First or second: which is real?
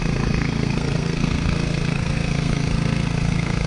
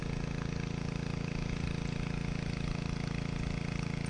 second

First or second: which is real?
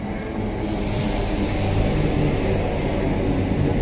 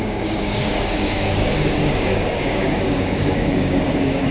first